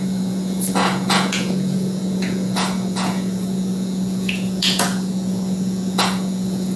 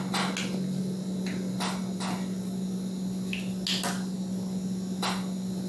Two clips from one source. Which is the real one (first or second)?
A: second